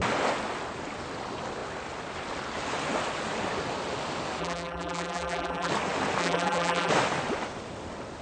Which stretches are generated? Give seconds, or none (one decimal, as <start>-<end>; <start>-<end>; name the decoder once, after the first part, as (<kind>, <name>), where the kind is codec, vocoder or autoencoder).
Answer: 4.4-5.7 (vocoder, BigVGAN v2); 6.2-6.9